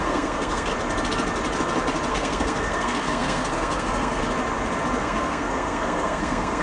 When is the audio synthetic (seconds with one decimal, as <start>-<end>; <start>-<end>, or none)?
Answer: 0.0-0.7; 2.1-4.2; 5.0-6.6